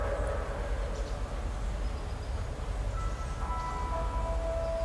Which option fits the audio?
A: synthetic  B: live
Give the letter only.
B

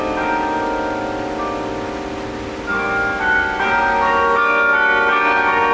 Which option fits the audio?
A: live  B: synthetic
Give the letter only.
A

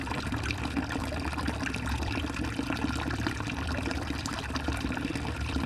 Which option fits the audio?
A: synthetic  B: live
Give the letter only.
A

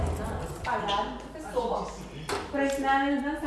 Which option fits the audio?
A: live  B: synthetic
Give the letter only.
A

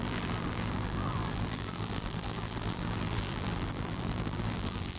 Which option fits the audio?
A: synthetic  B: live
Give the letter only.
A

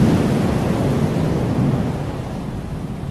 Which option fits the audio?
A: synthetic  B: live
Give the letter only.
A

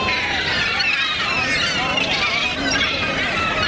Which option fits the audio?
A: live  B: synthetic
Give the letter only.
A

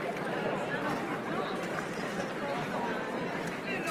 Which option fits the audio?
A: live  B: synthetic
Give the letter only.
B